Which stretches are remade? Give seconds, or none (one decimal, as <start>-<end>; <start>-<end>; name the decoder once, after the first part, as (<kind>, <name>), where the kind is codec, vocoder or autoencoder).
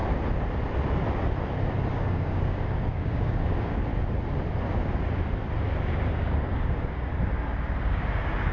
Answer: 1.9-3.9 (codec, DAC); 5.9-7.1; 7.8-8.5